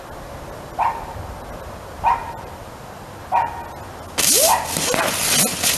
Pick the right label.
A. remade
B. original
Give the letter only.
B